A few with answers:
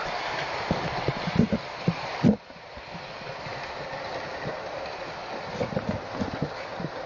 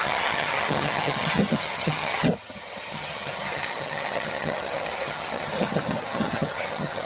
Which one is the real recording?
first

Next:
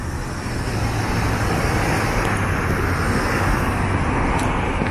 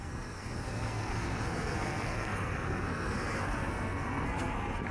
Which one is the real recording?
first